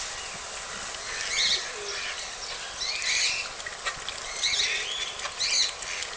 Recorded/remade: recorded